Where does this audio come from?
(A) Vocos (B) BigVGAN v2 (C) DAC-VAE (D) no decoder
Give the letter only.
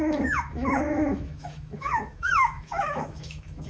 C